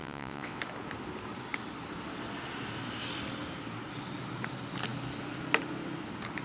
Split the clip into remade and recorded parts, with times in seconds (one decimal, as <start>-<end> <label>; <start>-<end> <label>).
0.0-0.6 remade; 0.6-6.4 recorded